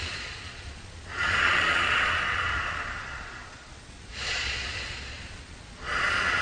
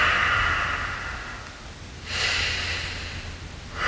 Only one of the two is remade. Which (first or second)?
first